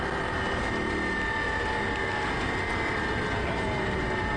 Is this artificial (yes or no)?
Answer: no